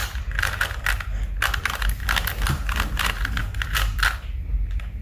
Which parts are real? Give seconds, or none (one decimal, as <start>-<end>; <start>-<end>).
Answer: 0.0-5.0